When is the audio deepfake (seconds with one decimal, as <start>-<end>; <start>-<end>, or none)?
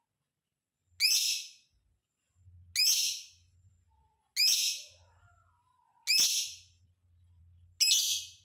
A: none